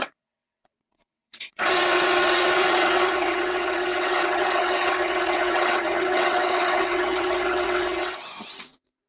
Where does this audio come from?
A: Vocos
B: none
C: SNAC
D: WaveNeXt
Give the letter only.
D